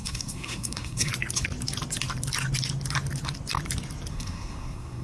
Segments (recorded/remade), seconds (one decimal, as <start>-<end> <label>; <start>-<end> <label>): 0.0-1.1 remade; 1.1-4.1 recorded; 4.1-5.0 remade